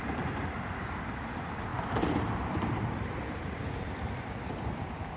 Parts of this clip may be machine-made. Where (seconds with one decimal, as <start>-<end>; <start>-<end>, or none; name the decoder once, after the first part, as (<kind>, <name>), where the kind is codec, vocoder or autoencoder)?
0.0-5.2 (vocoder, BigVGAN v2)